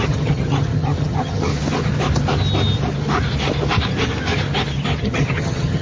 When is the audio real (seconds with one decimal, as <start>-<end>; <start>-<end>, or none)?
1.5-5.0

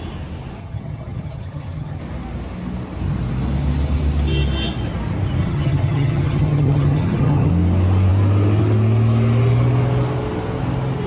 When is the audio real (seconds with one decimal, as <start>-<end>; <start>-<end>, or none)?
0.0-0.6; 2.0-5.4; 7.5-11.1

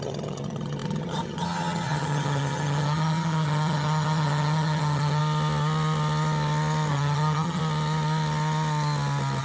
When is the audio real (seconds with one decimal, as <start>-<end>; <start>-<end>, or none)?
5.2-6.9; 7.6-9.4